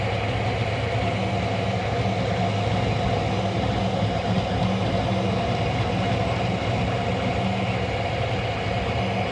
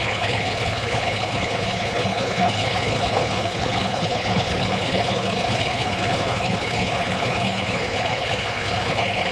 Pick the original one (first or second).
first